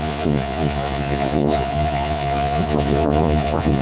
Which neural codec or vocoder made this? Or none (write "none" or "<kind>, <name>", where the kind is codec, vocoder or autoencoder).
vocoder, Vocos